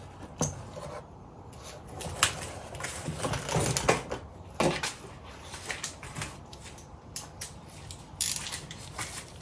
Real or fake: real